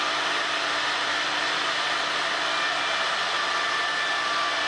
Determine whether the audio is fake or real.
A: real